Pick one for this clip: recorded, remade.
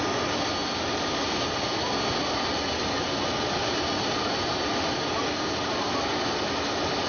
recorded